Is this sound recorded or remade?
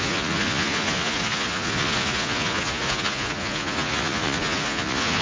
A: remade